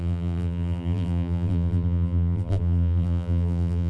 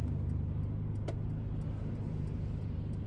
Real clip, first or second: second